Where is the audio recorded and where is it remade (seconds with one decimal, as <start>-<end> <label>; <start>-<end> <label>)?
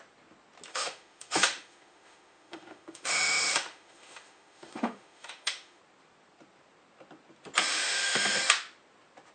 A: 0.0-0.7 recorded; 0.7-5.8 remade; 5.8-7.7 recorded; 7.7-8.4 remade; 8.4-9.3 recorded